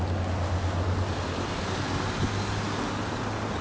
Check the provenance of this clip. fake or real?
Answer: real